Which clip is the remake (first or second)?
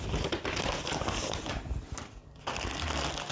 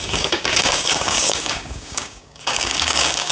second